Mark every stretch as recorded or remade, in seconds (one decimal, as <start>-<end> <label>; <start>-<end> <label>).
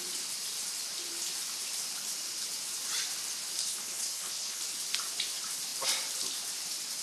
0.0-3.6 recorded; 3.6-4.6 remade; 4.6-7.0 recorded